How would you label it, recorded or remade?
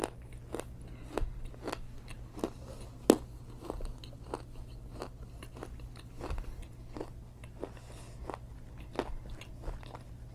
recorded